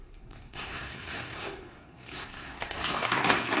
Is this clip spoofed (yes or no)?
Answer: yes